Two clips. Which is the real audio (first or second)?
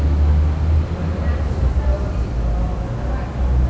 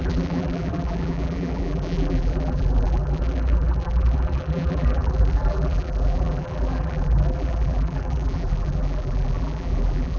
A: first